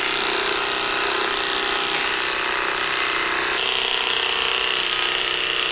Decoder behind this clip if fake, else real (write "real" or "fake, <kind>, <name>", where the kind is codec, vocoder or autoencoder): real